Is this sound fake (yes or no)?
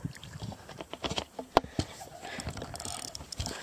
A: yes